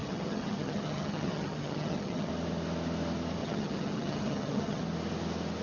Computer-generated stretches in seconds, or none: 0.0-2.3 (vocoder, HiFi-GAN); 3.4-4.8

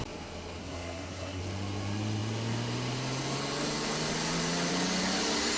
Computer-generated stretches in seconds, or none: 0.6-1.4 (codec, SNAC)

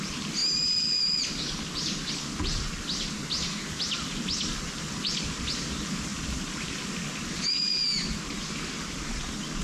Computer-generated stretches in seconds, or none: none

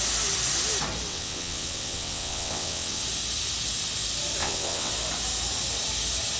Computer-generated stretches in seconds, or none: 1.1-3.0 (vocoder, WaveNeXt); 4.4-4.9

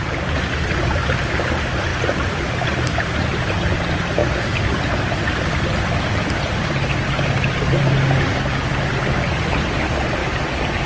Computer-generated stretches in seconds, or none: 0.0-1.9 (vocoder, BigVGAN v2); 2.5-4.2; 7.8-10.2

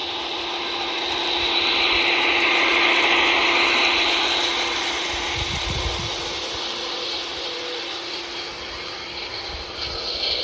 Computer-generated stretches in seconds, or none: none